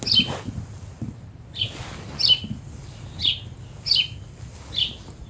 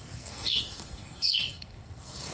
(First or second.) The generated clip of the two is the second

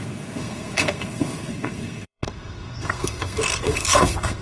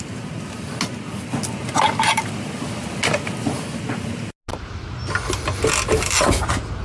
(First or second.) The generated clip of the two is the first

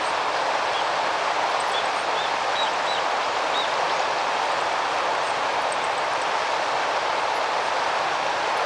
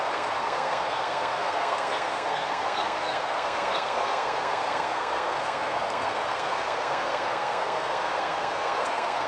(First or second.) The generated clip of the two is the second